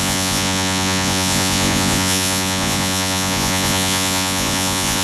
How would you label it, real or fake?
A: fake